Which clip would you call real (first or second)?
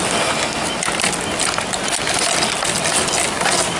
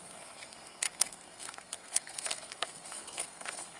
first